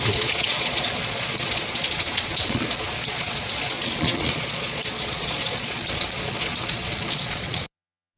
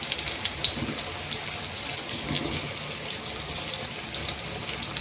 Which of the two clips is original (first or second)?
second